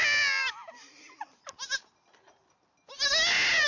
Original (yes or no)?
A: yes